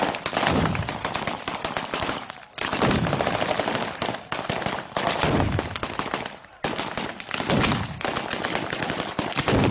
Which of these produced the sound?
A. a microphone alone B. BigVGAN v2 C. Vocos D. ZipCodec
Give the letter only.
A